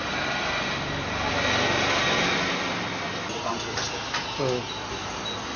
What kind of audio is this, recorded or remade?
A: recorded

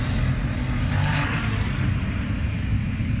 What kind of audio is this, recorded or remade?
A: recorded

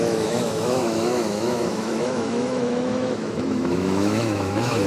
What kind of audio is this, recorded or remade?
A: remade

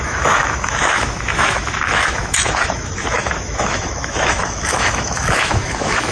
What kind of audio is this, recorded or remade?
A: remade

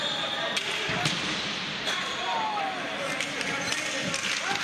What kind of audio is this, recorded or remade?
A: recorded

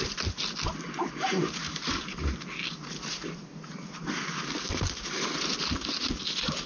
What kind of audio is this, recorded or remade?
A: recorded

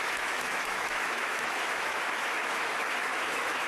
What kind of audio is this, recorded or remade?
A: remade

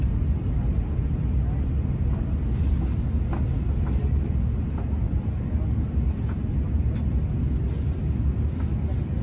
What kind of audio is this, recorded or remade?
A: recorded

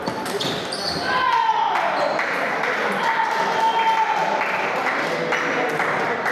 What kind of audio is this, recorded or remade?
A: recorded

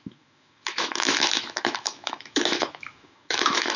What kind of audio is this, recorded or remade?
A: remade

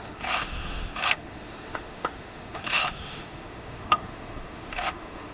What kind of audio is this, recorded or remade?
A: remade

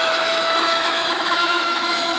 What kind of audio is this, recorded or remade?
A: remade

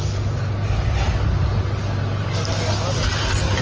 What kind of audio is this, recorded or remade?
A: recorded